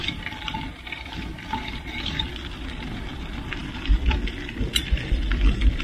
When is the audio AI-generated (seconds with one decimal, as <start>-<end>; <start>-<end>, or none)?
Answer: 0.0-5.8